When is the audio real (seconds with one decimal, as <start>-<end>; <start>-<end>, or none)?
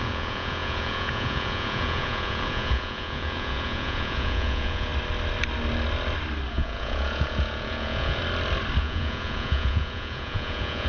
4.9-6.5; 8.2-8.8